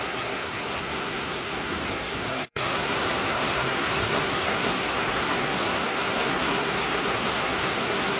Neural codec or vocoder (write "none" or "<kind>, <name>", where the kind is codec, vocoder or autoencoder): codec, SNAC